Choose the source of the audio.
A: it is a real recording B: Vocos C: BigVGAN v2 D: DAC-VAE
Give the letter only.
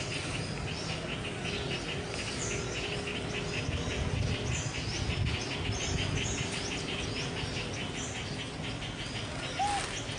A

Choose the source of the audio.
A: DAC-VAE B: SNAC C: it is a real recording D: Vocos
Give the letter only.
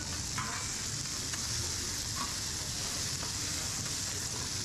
C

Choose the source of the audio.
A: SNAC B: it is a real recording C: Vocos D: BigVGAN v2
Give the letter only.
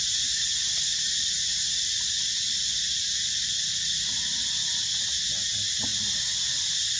B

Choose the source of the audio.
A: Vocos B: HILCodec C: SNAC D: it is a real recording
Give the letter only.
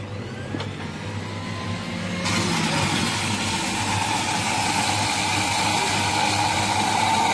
D